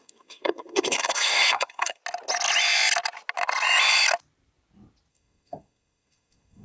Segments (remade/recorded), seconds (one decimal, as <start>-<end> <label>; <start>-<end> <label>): 0.0-2.0 remade; 2.0-5.1 recorded; 5.1-6.6 remade